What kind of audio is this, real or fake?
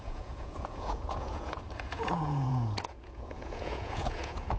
fake